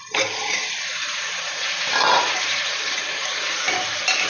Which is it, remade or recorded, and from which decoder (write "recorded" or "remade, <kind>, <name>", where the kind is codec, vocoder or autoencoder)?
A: remade, vocoder, BigVGAN v2